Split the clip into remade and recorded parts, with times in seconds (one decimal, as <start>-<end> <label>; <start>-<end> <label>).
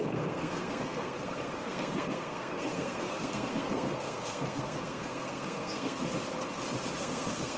0.0-6.0 remade; 6.0-7.0 recorded; 7.0-7.6 remade